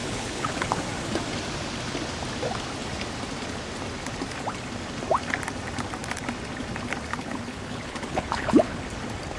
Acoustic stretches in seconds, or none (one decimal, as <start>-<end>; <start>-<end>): 0.7-7.1; 8.8-9.4